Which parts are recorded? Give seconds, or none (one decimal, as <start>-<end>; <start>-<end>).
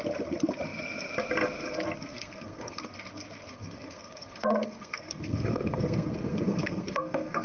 0.0-2.1; 2.8-3.5